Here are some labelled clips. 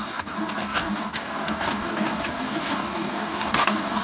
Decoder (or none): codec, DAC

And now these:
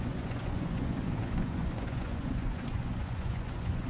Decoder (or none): vocoder, Vocos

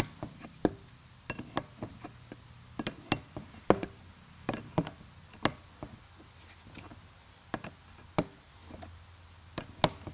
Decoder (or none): none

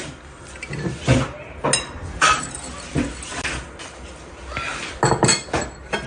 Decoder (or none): none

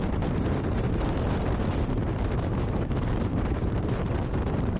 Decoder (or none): vocoder, BigVGAN v2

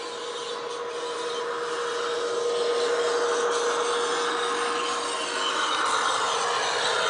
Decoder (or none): none